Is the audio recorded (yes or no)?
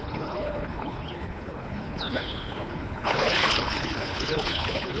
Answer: no